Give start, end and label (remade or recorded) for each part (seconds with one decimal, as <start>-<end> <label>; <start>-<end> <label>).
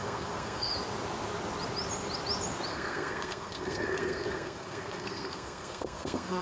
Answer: 0.0-0.7 remade; 0.7-2.7 recorded; 2.7-6.4 remade